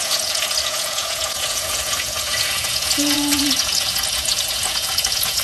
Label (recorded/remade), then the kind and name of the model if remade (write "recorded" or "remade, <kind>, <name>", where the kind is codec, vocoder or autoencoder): remade, vocoder, Vocos